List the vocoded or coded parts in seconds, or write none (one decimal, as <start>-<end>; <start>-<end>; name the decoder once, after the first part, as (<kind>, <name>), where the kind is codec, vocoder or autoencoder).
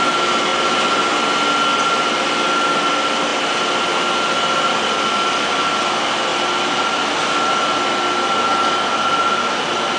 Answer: none